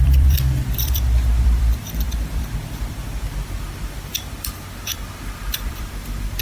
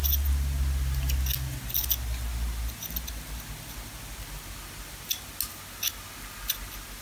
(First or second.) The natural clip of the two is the second